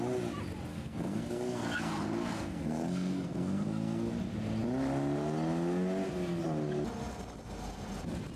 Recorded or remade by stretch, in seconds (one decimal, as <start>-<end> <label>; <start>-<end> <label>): 0.0-0.7 recorded; 0.7-4.1 remade; 4.1-8.4 recorded